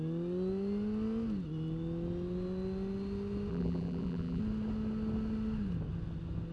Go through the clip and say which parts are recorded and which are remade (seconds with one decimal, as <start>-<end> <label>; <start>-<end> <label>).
0.0-3.5 recorded; 3.5-4.4 remade; 4.4-6.5 recorded